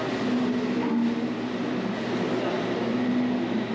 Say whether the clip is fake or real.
real